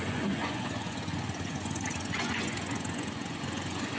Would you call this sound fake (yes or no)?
yes